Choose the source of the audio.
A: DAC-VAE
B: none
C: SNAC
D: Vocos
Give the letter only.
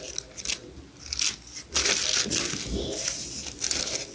B